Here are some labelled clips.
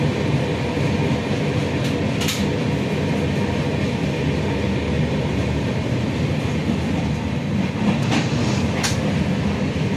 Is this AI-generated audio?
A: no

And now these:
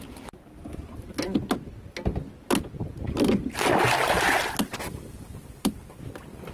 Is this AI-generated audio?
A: no